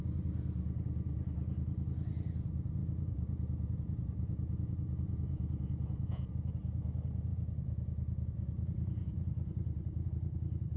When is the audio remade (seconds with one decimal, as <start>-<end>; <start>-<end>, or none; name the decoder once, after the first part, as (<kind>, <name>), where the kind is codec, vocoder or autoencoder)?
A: 2.8-6.3 (vocoder, Vocos); 7.3-10.1